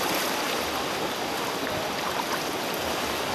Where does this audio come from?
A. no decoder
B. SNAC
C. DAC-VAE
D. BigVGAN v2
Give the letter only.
A